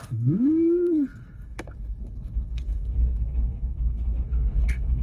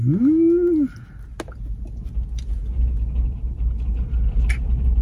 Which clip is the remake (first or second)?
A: first